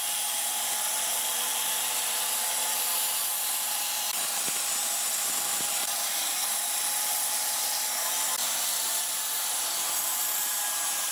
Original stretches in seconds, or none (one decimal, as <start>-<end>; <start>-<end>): 0.0-11.1